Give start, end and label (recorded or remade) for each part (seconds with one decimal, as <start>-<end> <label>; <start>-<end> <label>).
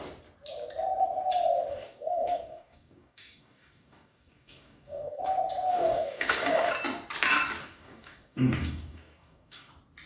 0.0-1.7 recorded; 1.7-5.2 remade; 5.2-5.7 recorded; 5.7-6.7 remade; 6.7-7.6 recorded; 7.6-9.7 remade; 9.7-10.1 recorded